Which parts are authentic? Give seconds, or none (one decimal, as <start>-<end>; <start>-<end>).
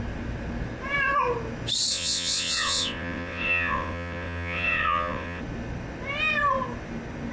0.0-1.9; 5.4-7.3